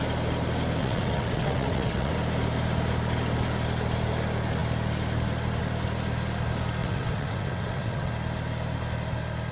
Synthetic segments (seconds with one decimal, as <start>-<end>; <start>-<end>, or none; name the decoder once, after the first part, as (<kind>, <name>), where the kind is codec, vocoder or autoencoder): 0.8-2.1 (vocoder, WaveNeXt); 6.8-8.1

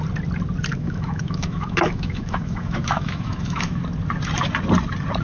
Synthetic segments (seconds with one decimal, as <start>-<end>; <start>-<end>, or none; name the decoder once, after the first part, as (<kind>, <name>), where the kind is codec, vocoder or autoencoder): 0.7-3.8 (autoencoder, DAC-VAE)